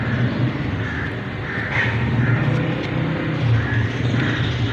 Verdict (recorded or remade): recorded